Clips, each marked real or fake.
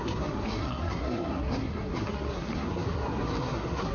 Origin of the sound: fake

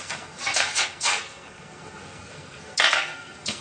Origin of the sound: fake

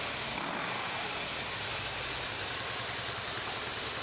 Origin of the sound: real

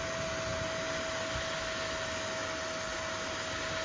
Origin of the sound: real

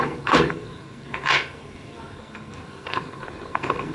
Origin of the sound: fake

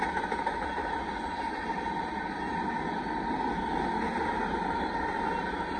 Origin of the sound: real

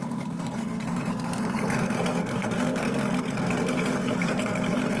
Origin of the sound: fake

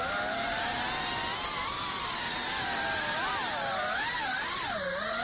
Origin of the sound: real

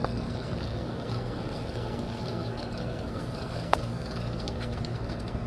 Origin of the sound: fake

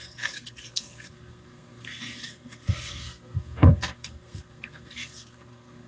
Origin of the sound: fake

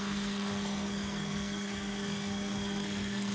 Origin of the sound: fake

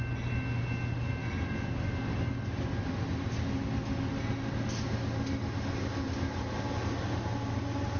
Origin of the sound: real